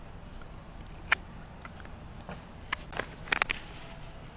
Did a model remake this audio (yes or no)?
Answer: no